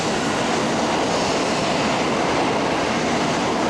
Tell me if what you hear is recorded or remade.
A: recorded